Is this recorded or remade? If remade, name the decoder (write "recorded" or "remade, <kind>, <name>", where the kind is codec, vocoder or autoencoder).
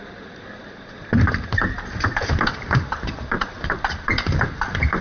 remade, vocoder, BigVGAN v2